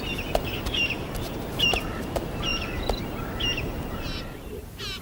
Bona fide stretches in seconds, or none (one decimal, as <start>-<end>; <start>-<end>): 0.0-5.0